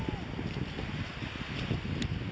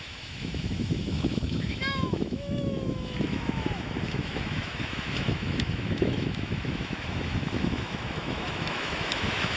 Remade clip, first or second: second